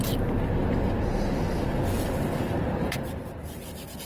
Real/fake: real